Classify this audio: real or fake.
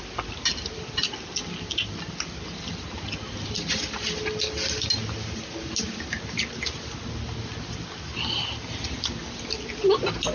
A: real